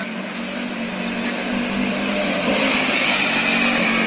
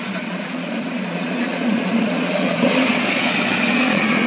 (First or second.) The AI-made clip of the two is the second